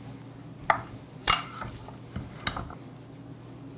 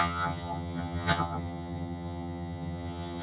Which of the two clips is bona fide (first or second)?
first